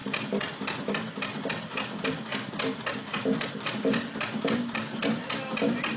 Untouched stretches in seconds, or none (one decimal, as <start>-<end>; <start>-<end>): 0.0-6.0